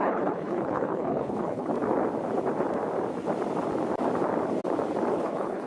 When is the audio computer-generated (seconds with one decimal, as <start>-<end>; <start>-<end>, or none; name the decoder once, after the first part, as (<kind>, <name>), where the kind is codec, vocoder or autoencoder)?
0.0-1.7 (codec, HILCodec); 5.1-5.7